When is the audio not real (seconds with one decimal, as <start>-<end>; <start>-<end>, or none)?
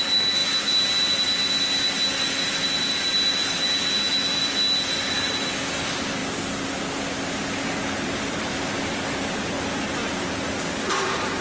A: none